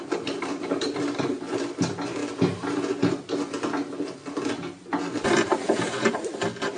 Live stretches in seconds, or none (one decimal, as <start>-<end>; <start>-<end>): 2.2-4.0